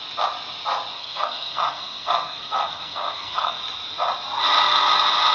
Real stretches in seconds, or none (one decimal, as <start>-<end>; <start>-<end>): 0.0-0.9; 3.6-5.3

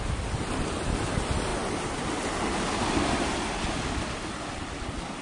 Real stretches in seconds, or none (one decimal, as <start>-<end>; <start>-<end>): 0.0-5.2

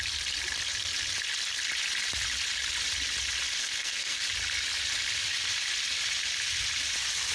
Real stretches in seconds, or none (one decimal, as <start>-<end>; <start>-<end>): 0.0-3.6; 4.2-7.3

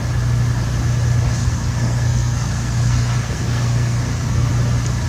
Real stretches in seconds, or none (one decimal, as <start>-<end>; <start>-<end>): 0.0-1.4; 4.5-5.1

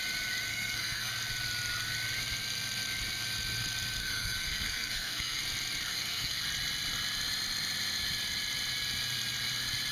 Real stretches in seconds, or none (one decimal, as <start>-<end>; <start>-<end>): 0.0-0.5; 1.1-4.0; 5.4-5.9; 6.4-9.9